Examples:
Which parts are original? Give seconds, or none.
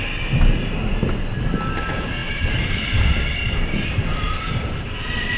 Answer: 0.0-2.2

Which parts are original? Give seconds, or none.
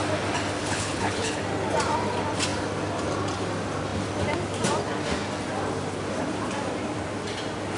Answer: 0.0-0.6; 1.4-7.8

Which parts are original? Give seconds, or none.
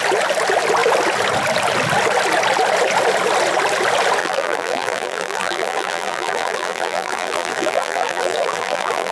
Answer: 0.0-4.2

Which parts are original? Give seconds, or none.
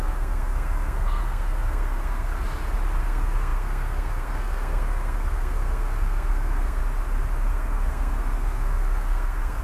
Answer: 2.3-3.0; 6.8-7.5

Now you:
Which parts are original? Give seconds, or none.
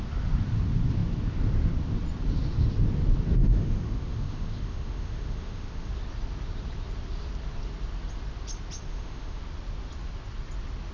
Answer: 0.0-3.4; 5.9-8.9; 9.4-10.9